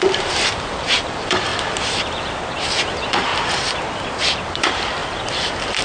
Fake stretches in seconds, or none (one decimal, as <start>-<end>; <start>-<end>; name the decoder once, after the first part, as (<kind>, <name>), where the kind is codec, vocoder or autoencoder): 0.0-1.5 (vocoder, BigVGAN v2); 2.9-3.3; 4.6-5.8

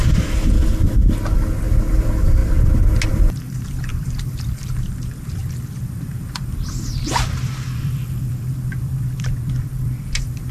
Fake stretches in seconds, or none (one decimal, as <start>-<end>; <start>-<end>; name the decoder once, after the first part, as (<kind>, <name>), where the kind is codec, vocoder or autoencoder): 0.0-0.7 (vocoder, BigVGAN v2); 1.9-2.4; 3.1-10.5

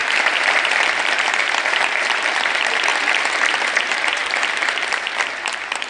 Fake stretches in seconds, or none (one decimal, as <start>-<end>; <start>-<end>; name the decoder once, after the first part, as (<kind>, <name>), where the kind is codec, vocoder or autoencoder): 0.0-2.9 (vocoder, BigVGAN v2); 3.8-5.9

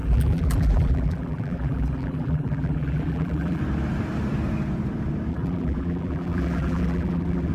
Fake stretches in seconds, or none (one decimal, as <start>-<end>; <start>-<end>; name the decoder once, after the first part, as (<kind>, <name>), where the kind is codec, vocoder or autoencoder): 0.0-3.6 (vocoder, BigVGAN v2); 5.3-7.5

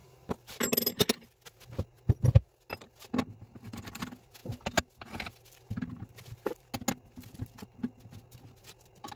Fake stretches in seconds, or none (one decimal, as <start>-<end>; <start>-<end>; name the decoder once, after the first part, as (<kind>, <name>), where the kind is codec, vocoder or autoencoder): none

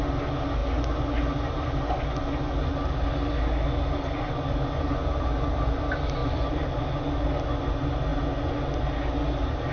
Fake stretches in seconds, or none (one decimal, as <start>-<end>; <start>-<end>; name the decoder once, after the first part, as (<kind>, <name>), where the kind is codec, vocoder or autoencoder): 6.2-6.8 (vocoder, BigVGAN v2)

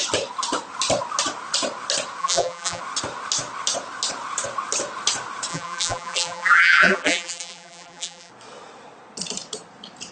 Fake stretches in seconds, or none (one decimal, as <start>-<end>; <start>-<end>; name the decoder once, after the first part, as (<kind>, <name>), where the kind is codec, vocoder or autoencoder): 2.2-2.8 (vocoder, BigVGAN v2); 5.5-8.3